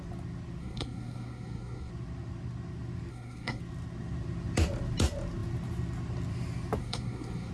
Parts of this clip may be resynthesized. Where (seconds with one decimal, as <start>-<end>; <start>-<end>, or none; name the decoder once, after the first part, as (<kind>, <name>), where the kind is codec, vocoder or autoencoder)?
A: 0.6-1.9 (codec, SNAC); 3.1-3.6; 6.8-7.5